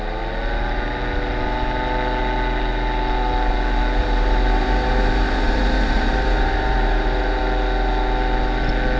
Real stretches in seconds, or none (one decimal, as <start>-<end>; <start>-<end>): 0.0-4.0; 7.4-9.0